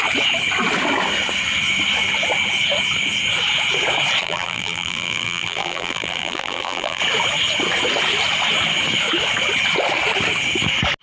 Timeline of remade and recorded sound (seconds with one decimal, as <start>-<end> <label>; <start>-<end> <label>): 0.0-4.2 recorded; 4.2-7.0 remade; 7.0-11.0 recorded